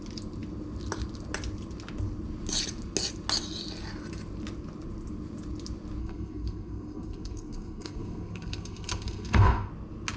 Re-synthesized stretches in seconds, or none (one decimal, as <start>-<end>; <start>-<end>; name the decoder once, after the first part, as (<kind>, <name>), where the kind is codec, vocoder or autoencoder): 6.0-9.7 (codec, SNAC)